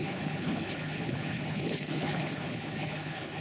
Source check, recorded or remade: remade